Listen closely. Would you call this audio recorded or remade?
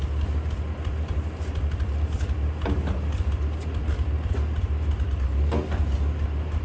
recorded